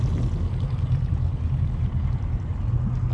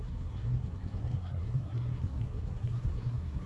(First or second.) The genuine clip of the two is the first